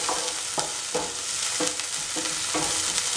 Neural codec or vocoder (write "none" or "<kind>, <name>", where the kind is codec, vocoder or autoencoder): none